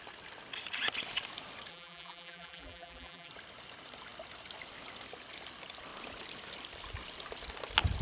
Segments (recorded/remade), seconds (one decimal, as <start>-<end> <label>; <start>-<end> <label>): 0.0-1.7 recorded; 1.7-3.3 remade; 3.3-8.0 recorded